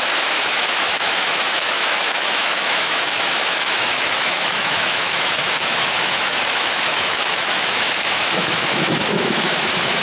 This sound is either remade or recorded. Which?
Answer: remade